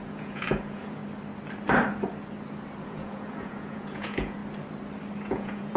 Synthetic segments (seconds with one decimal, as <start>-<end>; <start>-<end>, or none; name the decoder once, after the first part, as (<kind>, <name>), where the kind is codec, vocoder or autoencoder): 0.0-1.0 (vocoder, Vocos); 2.8-4.4; 5.2-5.8

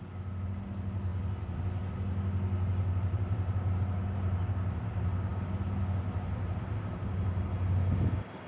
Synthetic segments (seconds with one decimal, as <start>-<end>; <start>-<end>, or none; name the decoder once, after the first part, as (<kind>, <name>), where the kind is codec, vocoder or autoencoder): none

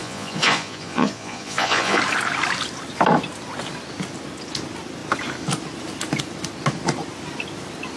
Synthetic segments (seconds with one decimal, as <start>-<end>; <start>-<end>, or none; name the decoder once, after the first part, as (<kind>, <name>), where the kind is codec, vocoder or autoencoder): 0.0-2.0 (vocoder, Vocos)

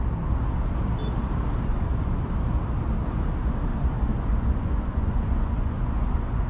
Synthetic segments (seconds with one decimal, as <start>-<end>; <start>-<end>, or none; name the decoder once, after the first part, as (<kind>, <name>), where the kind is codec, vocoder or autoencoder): 1.7-2.3 (vocoder, Vocos); 3.7-6.5

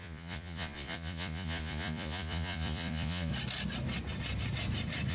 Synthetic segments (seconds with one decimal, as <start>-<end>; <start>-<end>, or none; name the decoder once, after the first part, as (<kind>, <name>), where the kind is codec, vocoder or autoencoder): 0.0-3.3 (vocoder, Vocos)